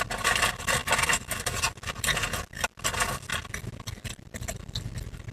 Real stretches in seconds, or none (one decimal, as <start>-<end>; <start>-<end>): 0.0-5.3